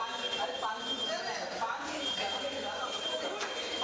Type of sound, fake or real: real